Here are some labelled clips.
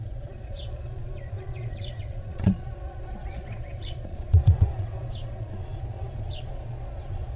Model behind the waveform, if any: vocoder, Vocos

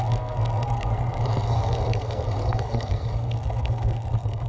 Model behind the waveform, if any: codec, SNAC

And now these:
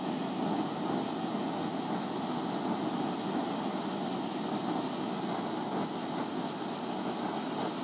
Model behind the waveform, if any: none